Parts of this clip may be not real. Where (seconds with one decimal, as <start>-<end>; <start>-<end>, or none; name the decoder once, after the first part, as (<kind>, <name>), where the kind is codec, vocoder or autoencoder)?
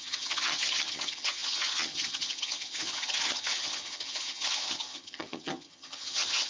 0.0-6.5 (vocoder, HiFi-GAN)